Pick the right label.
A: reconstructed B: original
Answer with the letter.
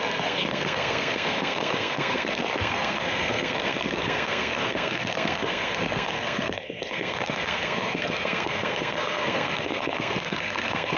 A